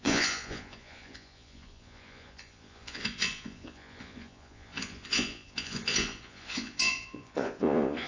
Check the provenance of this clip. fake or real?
fake